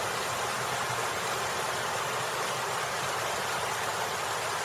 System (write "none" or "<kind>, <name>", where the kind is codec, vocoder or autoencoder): none